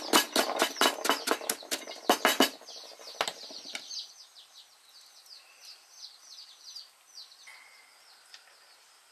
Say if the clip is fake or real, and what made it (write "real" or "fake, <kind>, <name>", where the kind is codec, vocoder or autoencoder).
real